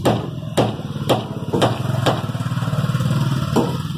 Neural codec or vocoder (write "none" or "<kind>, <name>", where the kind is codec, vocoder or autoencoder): none